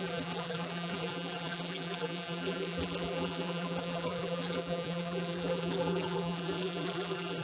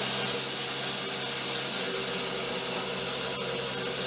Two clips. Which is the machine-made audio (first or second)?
first